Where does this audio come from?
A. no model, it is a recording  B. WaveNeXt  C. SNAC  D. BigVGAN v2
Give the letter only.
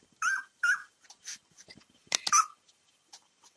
A